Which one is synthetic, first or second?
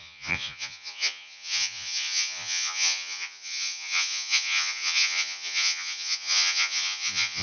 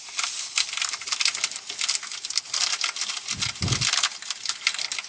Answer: first